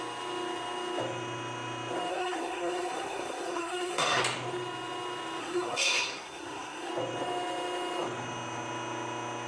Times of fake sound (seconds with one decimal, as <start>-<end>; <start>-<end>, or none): 2.1-4.2; 5.4-6.9